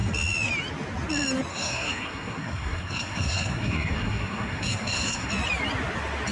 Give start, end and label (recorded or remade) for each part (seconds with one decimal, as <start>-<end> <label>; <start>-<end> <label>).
0.0-1.5 recorded; 1.5-5.3 remade; 5.3-6.3 recorded